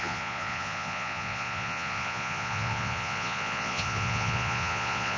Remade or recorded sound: remade